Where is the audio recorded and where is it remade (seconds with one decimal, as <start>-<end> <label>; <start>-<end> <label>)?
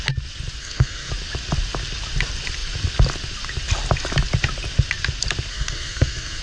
0.0-0.6 recorded; 0.6-1.1 remade; 1.1-5.5 recorded; 5.5-6.4 remade